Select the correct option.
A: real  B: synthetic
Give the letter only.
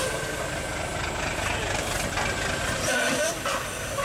A